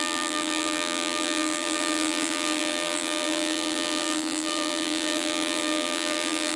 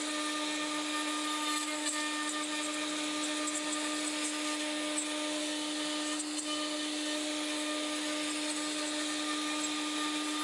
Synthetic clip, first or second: first